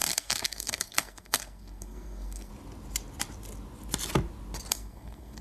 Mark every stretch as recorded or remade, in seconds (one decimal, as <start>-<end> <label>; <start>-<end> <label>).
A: 0.0-2.5 remade; 2.5-4.7 recorded; 4.7-5.4 remade